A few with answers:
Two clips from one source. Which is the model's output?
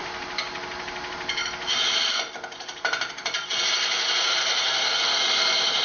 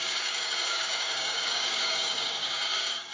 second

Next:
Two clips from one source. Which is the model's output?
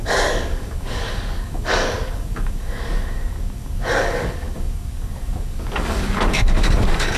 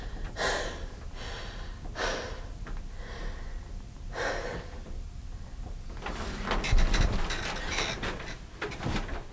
first